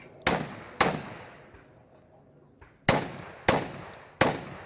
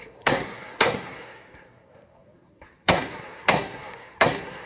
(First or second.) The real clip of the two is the first